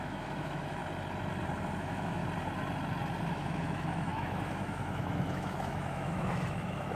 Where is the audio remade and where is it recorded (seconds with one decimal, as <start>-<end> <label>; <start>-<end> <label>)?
0.0-0.8 remade; 0.8-1.8 recorded; 1.8-2.2 remade; 2.2-3.3 recorded; 3.3-7.0 remade

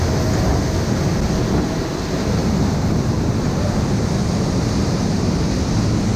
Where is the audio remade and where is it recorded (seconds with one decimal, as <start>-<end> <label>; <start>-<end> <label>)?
0.0-2.4 recorded; 2.4-3.5 remade; 3.5-6.2 recorded